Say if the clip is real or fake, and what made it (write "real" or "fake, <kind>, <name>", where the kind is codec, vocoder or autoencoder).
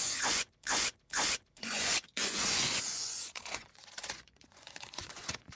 fake, vocoder, Vocos